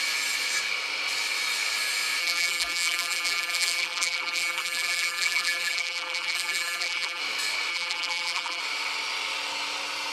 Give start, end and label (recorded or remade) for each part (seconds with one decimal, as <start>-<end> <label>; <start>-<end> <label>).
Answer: 0.0-2.2 recorded; 2.2-7.2 remade; 7.2-7.7 recorded; 7.7-8.6 remade; 8.6-10.1 recorded